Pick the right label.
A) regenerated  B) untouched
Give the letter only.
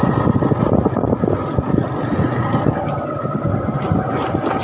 B